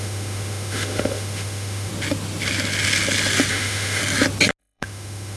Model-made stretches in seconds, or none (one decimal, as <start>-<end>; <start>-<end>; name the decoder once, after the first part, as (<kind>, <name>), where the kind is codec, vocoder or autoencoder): 0.0-1.9 (autoencoder, DAC-VAE); 3.5-4.0; 4.6-5.4